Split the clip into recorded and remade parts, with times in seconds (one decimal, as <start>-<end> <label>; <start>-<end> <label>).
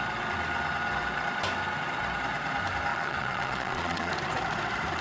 0.0-2.9 recorded; 2.9-4.1 remade; 4.1-5.0 recorded